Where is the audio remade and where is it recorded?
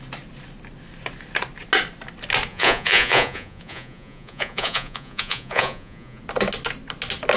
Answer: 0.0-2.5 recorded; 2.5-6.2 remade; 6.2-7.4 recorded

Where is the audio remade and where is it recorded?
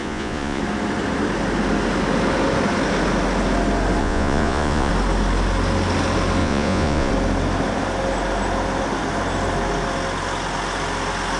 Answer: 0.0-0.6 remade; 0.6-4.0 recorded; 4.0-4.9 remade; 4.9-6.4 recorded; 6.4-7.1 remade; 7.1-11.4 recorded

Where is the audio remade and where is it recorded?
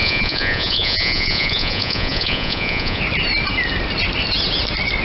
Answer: 0.0-3.0 remade; 3.0-5.0 recorded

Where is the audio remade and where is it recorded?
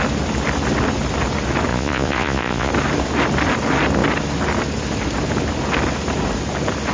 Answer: 0.0-1.7 recorded; 1.7-2.7 remade; 2.7-6.9 recorded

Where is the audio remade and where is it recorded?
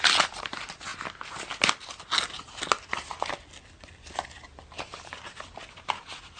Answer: 0.0-6.4 recorded